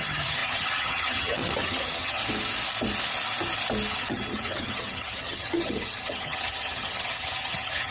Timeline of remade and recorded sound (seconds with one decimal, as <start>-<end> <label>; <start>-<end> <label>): 0.0-2.2 remade; 2.2-3.9 recorded; 3.9-7.9 remade